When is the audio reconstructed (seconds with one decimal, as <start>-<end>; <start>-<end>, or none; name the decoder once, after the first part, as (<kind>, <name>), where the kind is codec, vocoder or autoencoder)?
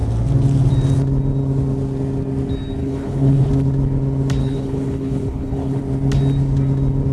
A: 2.8-3.5 (codec, HILCodec); 4.4-5.8